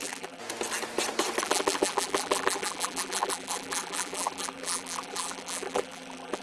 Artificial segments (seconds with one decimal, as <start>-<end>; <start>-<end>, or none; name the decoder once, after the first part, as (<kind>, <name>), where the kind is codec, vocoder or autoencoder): 0.0-0.4 (vocoder, BigVGAN v2); 1.4-6.4

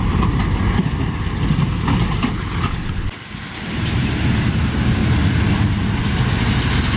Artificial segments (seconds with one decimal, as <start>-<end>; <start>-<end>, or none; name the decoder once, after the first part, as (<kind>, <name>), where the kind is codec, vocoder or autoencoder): 0.0-0.9 (vocoder, BigVGAN v2); 3.5-5.0; 5.5-6.0

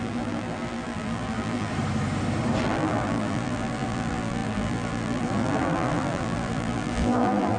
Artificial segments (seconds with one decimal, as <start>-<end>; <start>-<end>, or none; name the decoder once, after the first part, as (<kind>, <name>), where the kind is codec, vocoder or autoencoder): 0.0-1.7 (vocoder, BigVGAN v2); 2.6-7.6

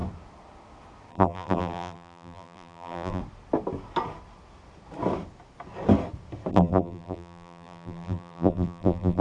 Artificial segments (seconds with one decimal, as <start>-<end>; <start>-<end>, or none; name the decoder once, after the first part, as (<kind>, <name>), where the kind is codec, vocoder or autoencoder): 1.1-3.2 (vocoder, BigVGAN v2); 6.5-9.2

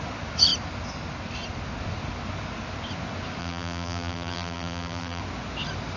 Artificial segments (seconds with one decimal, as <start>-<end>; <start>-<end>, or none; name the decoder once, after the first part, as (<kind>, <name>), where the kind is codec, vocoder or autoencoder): 3.4-5.2 (vocoder, BigVGAN v2)

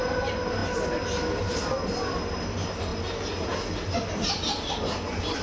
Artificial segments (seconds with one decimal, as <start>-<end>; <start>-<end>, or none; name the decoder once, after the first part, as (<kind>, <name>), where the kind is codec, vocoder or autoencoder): none

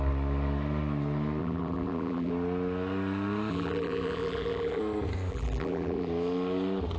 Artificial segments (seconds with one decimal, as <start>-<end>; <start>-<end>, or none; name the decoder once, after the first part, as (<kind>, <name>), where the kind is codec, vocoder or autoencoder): 1.4-2.3 (vocoder, BigVGAN v2); 3.5-4.8; 5.3-6.1

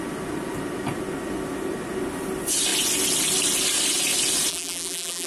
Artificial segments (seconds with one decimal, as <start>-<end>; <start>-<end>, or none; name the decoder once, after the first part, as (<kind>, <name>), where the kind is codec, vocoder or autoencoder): 4.5-5.3 (vocoder, BigVGAN v2)